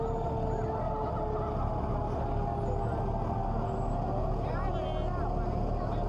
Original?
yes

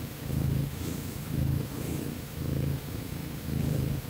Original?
no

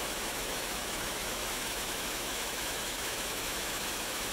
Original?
no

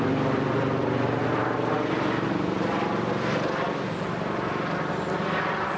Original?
yes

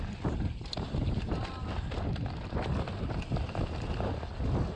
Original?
yes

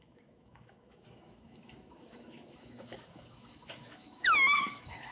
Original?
no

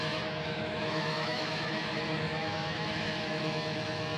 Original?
no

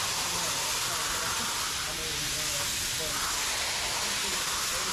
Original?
yes